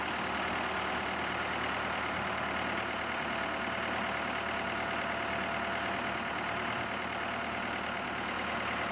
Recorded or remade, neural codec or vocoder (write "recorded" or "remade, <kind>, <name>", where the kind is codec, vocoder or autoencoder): recorded